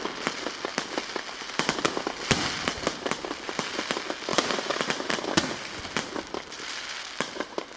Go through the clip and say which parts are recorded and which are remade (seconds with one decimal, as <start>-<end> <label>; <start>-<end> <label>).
0.0-7.8 recorded